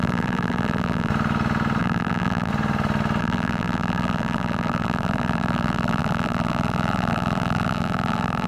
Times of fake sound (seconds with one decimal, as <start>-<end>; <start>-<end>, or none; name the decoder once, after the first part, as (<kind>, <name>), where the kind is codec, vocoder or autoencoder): 0.0-1.1 (vocoder, BigVGAN v2); 1.8-2.5; 3.2-8.5